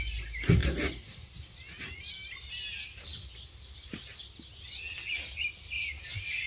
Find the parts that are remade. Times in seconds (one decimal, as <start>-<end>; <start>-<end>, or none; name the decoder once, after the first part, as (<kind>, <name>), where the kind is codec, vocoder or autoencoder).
0.6-1.3 (vocoder, BigVGAN v2)